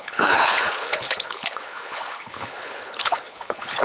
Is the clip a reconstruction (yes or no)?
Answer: yes